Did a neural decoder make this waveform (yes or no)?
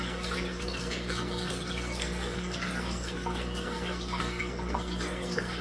yes